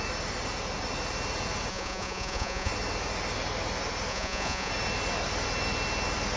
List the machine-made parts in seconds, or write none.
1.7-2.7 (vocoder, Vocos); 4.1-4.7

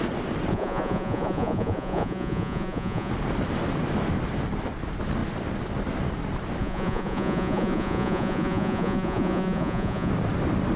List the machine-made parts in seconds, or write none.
0.5-3.1 (vocoder, Vocos); 6.6-10.1